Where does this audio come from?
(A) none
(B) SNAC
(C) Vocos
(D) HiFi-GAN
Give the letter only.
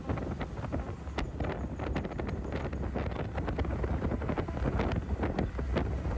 A